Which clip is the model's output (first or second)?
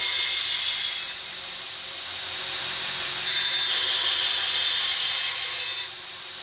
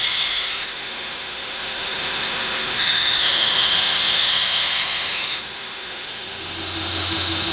second